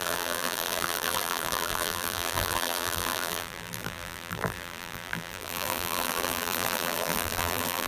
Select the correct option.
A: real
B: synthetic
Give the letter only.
B